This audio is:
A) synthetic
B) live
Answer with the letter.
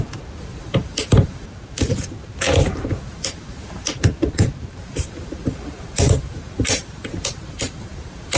A